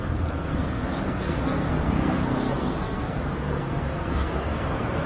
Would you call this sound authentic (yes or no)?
no